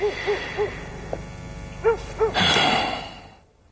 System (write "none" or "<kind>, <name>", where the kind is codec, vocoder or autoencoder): none